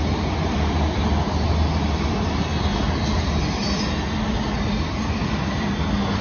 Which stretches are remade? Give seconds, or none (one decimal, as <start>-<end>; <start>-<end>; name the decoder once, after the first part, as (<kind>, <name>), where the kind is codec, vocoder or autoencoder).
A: none